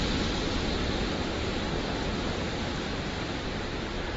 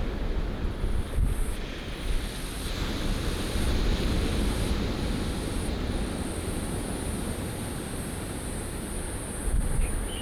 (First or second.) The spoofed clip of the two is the second